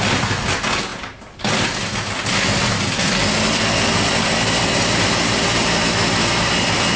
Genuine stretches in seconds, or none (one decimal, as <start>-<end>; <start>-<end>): 0.0-7.0